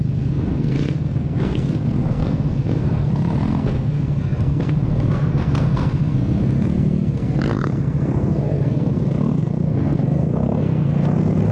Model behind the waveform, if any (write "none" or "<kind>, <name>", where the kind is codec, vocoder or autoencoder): codec, SNAC